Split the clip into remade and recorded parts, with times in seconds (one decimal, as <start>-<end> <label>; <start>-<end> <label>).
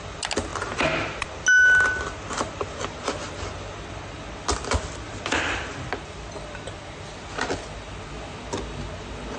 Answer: 0.0-9.4 recorded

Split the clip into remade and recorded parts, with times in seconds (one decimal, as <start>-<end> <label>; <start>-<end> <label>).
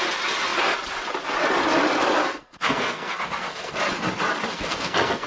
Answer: 0.0-2.2 recorded; 2.2-3.8 remade; 3.8-4.5 recorded; 4.5-5.3 remade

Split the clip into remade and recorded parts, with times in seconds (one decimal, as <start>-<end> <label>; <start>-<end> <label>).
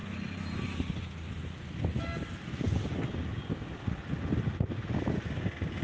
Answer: 0.0-5.8 recorded